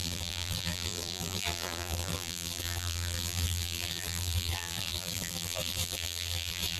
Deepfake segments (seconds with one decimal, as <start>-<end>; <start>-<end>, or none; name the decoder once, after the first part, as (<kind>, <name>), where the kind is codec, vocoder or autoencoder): 0.0-6.8 (vocoder, BigVGAN v2)